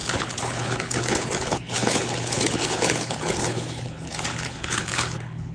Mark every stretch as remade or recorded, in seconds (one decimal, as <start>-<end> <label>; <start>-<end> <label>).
0.0-5.5 remade